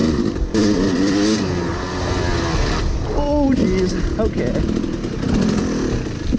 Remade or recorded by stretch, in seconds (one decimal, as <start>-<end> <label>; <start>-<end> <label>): 0.0-6.4 recorded